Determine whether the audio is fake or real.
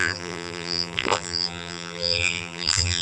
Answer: fake